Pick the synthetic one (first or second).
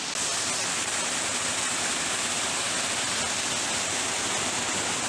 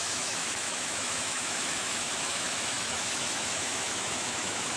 second